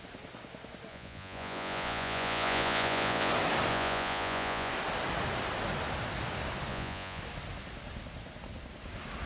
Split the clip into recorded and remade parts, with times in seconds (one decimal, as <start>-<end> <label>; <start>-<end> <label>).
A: 0.0-0.9 recorded; 0.9-3.3 remade; 3.3-3.7 recorded; 3.7-4.7 remade; 4.7-6.7 recorded; 6.7-7.2 remade; 7.2-9.3 recorded